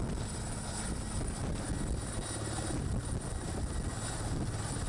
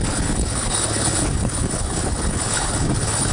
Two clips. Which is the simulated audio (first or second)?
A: second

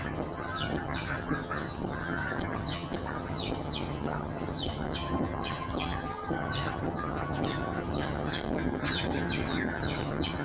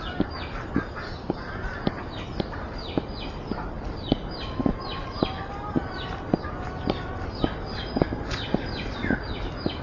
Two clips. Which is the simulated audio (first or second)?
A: first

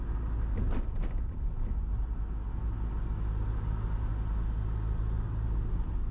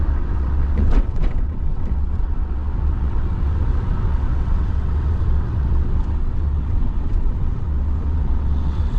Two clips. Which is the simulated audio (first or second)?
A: second